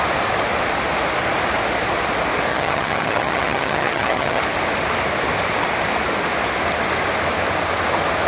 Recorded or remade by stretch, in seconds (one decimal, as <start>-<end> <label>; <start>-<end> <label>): 0.0-2.5 recorded; 2.5-4.4 remade; 4.4-8.3 recorded